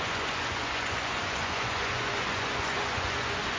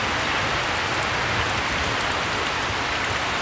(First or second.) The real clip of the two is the second